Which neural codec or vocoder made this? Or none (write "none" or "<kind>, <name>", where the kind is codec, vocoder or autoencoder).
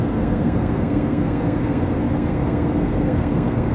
codec, SNAC